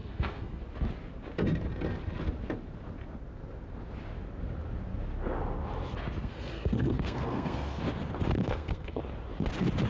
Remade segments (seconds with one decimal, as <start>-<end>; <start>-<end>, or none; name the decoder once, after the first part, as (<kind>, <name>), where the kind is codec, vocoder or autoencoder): 0.0-0.6 (codec, SNAC); 6.2-7.8; 8.4-9.0